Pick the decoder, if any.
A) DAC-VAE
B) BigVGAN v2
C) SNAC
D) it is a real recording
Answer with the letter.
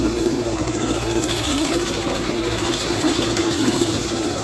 C